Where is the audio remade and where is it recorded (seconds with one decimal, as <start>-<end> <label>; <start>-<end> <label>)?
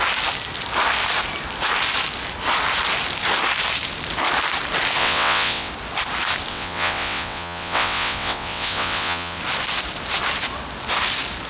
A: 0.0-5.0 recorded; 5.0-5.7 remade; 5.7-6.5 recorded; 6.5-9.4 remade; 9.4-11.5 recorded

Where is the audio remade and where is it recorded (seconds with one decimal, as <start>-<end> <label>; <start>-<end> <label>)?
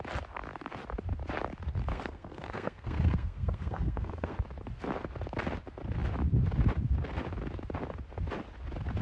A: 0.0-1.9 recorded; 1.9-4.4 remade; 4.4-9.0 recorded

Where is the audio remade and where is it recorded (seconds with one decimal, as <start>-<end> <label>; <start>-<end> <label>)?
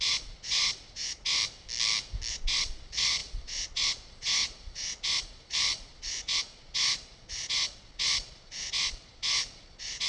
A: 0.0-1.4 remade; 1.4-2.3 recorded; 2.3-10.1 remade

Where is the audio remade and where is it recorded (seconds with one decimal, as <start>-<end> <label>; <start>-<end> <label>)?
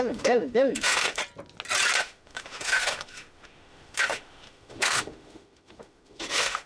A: 0.0-1.2 remade; 1.2-2.0 recorded; 2.0-6.7 remade